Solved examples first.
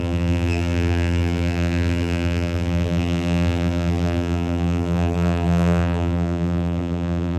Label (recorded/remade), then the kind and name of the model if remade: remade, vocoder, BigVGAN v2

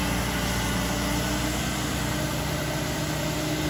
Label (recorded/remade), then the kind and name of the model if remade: recorded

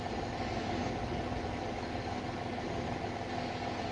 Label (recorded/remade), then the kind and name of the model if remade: recorded